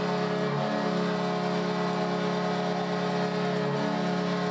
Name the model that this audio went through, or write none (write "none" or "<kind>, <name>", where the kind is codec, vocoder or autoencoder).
none